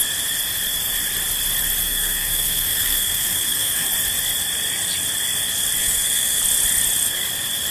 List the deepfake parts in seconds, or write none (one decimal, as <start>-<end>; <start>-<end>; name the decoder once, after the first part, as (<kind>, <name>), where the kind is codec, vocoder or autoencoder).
1.8-3.9 (codec, SNAC); 5.8-6.4